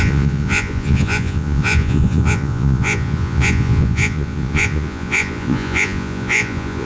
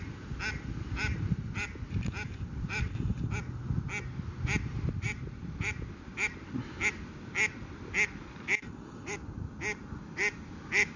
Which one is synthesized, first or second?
first